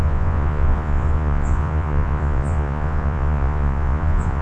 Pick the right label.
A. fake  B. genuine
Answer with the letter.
A